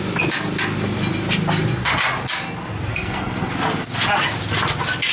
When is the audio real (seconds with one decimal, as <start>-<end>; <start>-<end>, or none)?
0.0-2.9; 3.5-5.1